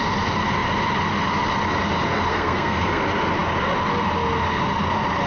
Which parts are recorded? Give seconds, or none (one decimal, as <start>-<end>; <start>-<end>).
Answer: 0.0-2.3; 3.0-5.3